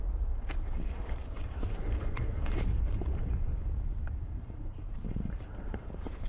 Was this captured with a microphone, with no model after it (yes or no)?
no